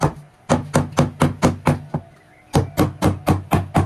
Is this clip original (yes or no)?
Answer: yes